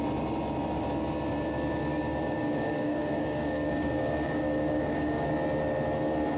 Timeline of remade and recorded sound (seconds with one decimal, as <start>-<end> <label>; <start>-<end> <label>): 0.0-1.9 recorded; 1.9-5.3 remade; 5.3-6.4 recorded